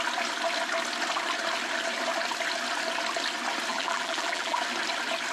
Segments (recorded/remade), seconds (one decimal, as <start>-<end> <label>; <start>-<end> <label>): 0.0-3.7 recorded; 3.7-4.6 remade; 4.6-5.3 recorded